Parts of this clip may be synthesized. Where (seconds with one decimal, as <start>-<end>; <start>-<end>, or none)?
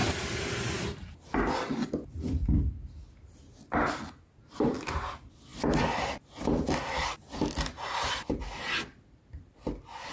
none